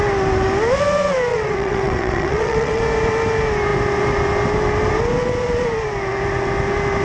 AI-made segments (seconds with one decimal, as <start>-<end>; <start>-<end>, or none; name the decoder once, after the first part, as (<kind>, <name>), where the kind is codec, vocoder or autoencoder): 1.3-2.8 (vocoder, WaveNeXt)